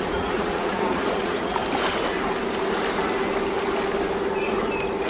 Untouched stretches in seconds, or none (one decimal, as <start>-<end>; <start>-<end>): 1.6-5.1

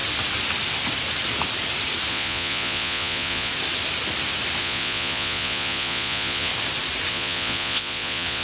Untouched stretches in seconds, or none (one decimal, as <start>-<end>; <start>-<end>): 0.0-2.1; 3.5-4.6; 6.5-7.1

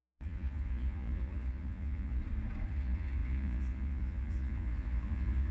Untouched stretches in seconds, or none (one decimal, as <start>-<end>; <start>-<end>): 2.2-2.7

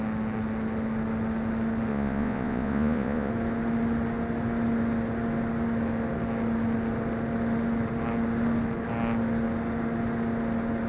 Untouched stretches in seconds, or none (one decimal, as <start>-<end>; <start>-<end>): 0.0-1.9; 3.3-10.9

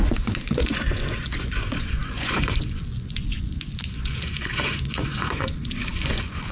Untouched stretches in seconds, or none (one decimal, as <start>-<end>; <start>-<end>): none

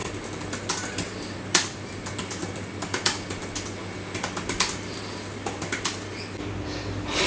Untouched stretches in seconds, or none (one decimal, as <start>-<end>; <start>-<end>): 0.0-7.3

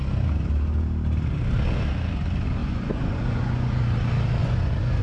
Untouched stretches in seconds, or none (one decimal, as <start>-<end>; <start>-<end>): 0.0-2.6; 3.8-4.4